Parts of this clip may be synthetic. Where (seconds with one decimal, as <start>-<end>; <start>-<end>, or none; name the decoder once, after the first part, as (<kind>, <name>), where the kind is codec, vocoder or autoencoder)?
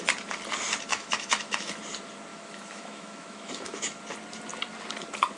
0.9-1.8 (autoencoder, DAC-VAE); 2.3-4.0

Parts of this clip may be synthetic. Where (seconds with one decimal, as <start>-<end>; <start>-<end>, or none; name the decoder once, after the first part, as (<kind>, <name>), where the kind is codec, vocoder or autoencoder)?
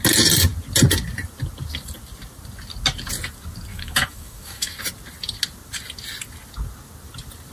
3.7-4.8 (autoencoder, DAC-VAE)